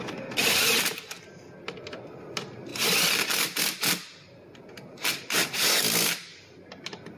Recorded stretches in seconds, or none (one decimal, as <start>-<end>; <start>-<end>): 0.0-7.2